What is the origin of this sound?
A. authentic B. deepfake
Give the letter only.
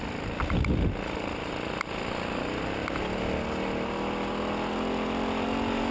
A